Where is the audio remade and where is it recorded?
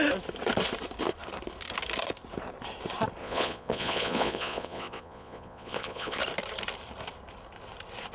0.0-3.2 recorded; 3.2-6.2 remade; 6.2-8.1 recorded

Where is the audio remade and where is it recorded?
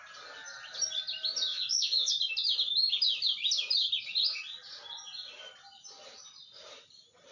0.0-1.5 recorded; 1.5-2.1 remade; 2.1-7.3 recorded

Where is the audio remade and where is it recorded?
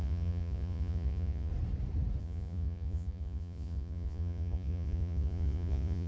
0.0-1.5 remade; 1.5-2.2 recorded; 2.2-6.1 remade